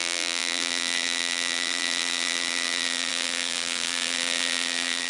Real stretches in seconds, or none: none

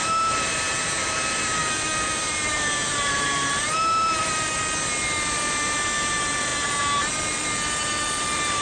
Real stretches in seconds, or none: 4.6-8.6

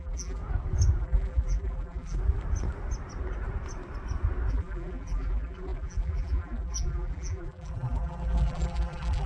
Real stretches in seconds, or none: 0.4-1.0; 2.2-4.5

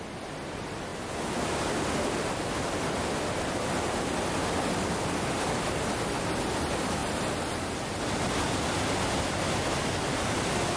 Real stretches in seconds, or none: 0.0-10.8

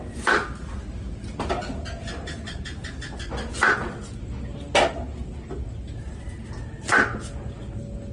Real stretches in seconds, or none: 0.0-8.1